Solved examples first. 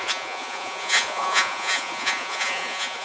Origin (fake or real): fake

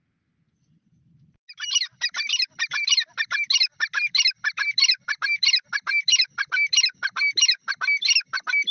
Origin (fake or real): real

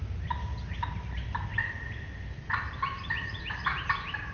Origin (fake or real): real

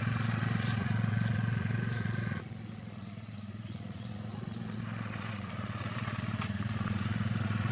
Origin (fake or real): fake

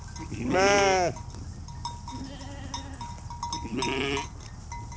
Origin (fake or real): real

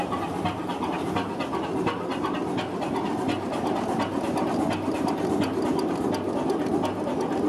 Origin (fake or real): real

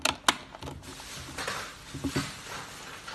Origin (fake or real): real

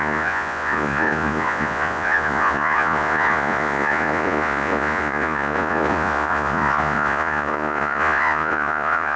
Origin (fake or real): fake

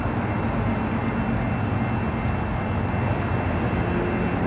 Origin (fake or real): real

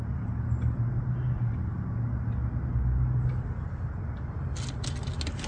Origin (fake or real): real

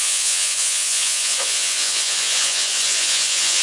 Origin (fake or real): fake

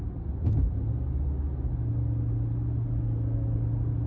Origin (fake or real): real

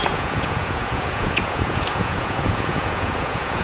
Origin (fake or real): fake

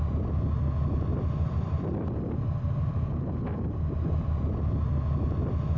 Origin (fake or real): real